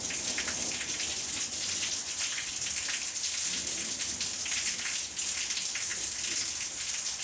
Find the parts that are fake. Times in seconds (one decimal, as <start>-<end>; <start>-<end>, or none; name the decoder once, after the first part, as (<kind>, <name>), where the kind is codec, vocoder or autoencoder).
1.1-2.5 (vocoder, Vocos)